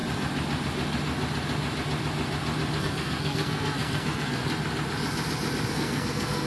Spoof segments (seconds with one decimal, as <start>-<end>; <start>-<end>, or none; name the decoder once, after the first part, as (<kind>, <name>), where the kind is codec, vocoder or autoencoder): 2.8-4.4 (codec, SNAC); 5.7-6.5